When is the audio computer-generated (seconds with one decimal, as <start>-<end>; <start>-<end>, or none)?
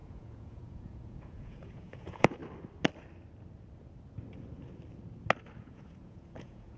0.0-2.4; 5.6-6.8